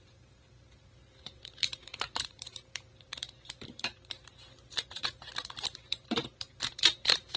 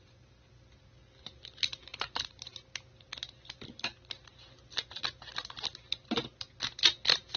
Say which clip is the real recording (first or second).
second